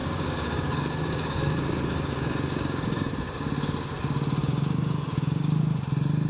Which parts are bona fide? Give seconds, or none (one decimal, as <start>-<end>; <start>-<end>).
3.1-4.4; 5.6-6.3